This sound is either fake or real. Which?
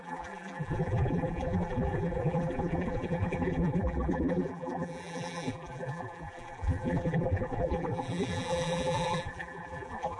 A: fake